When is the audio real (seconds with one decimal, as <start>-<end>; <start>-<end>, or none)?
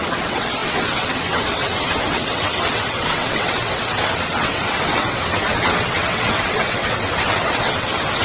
none